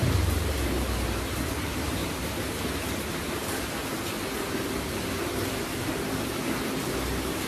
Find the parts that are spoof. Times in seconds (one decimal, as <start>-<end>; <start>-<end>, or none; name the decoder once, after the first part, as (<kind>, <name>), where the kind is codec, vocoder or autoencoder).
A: 0.0-2.0 (vocoder, BigVGAN v2); 4.4-7.5